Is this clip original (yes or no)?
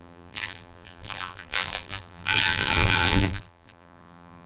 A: no